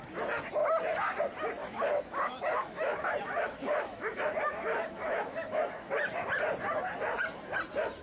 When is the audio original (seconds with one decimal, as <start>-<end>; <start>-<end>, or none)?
0.0-1.6; 6.3-8.0

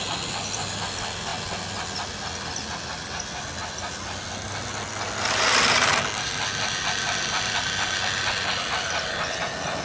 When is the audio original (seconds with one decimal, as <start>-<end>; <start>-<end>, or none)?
0.0-9.8

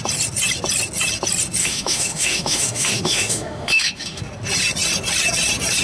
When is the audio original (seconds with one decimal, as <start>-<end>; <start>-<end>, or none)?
0.0-1.6; 4.2-5.8

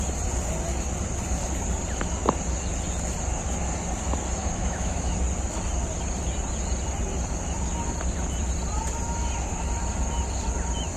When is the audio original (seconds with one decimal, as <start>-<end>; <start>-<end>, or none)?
0.0-4.4; 5.1-11.0

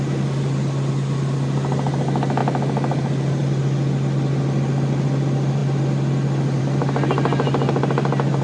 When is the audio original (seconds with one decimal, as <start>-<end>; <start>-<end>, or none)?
0.0-8.4